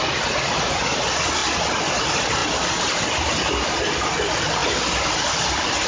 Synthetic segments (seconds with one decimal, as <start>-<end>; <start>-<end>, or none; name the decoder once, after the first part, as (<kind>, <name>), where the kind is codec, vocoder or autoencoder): none